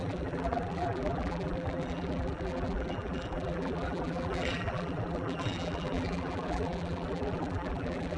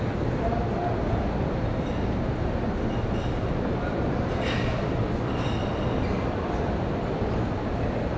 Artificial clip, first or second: first